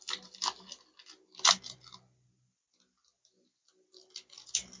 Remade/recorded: recorded